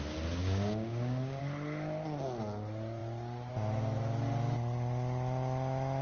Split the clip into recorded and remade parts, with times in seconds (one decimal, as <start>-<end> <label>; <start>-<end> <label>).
0.0-0.4 recorded; 0.4-1.4 remade; 1.4-6.0 recorded

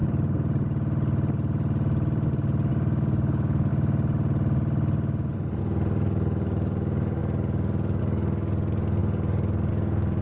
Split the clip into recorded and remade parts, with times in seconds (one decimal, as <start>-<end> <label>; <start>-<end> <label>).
0.0-2.7 recorded; 2.7-3.7 remade; 3.7-5.6 recorded; 5.6-10.2 remade

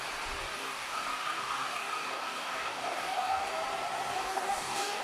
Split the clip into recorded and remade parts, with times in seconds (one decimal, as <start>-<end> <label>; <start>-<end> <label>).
0.0-0.5 recorded; 0.5-3.5 remade; 3.5-4.1 recorded; 4.1-5.0 remade

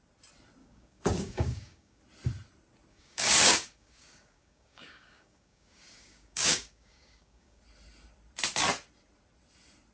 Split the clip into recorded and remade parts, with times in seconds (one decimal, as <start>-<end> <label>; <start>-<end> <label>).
0.0-0.6 recorded; 0.6-2.0 remade; 2.0-2.9 recorded; 2.9-7.6 remade; 7.6-9.9 recorded

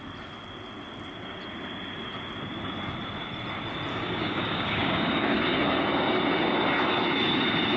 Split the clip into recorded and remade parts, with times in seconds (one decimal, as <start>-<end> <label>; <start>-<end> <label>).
0.0-3.9 recorded; 3.9-5.4 remade; 5.4-7.8 recorded